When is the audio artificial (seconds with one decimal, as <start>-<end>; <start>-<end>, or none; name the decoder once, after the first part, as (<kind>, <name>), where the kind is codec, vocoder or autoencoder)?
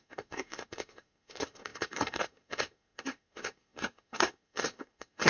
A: 0.0-5.3 (codec, SNAC)